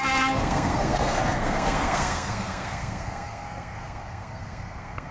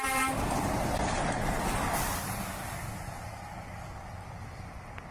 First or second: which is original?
second